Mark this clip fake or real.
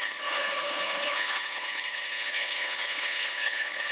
fake